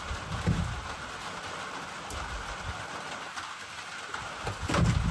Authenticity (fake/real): real